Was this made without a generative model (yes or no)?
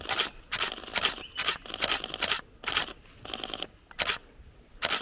yes